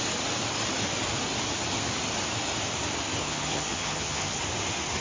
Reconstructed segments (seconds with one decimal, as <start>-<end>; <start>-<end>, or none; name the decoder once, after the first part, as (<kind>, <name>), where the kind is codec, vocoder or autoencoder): 3.2-4.4 (vocoder, HiFi-GAN)